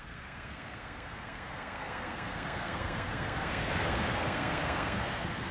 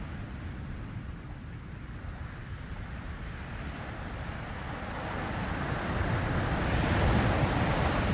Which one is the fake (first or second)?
first